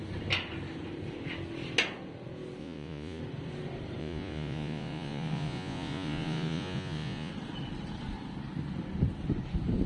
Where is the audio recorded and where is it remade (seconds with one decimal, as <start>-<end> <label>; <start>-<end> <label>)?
0.0-2.6 recorded; 2.6-3.2 remade; 3.2-4.0 recorded; 4.0-7.3 remade; 7.3-9.9 recorded